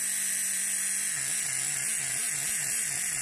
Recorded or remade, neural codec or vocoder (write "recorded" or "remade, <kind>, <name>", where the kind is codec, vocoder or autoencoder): recorded